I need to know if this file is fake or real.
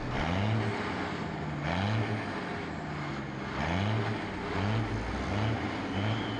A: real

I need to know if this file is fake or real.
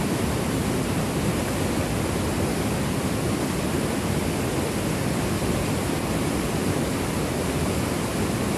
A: real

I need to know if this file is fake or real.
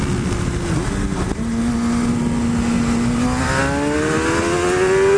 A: real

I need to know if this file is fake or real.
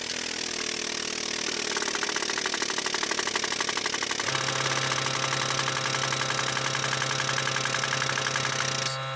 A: real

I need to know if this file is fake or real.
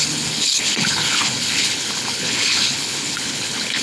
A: fake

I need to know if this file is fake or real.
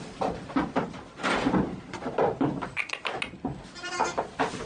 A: real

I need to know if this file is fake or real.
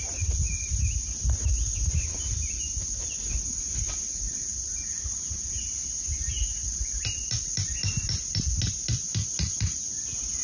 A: real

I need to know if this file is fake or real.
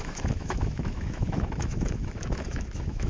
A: fake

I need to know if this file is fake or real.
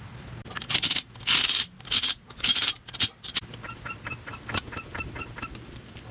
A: real